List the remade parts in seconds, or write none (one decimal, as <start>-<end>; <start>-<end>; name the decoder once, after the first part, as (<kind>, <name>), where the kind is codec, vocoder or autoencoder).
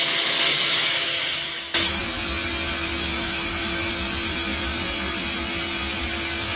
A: 0.5-2.0 (autoencoder, DAC-VAE); 3.1-3.9